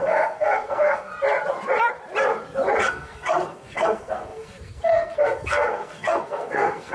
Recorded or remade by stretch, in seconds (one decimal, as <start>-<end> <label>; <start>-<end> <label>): 0.0-1.1 remade; 1.1-2.8 recorded; 2.8-6.9 remade